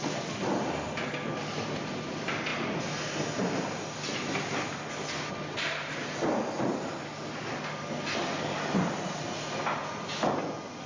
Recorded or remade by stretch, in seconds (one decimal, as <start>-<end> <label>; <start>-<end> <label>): 0.0-10.9 recorded